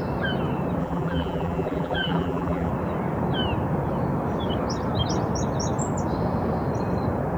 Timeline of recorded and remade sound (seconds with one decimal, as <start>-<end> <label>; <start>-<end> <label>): 0.0-0.8 recorded; 0.8-2.7 remade; 2.7-7.4 recorded